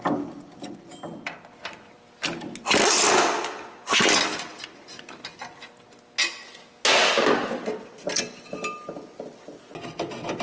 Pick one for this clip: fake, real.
real